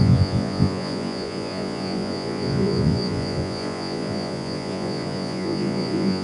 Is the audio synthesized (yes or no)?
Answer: yes